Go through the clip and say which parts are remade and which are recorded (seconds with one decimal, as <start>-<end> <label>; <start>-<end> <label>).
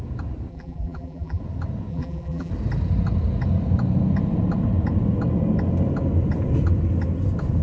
0.0-0.5 recorded; 0.5-1.4 remade; 1.4-1.9 recorded; 1.9-2.5 remade; 2.5-7.6 recorded